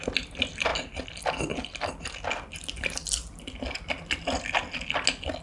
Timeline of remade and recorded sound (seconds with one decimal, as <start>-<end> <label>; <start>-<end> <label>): 0.0-5.4 recorded